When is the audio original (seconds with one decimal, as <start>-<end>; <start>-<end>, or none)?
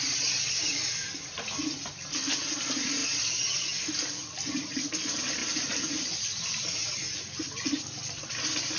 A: 0.0-5.4; 6.0-8.8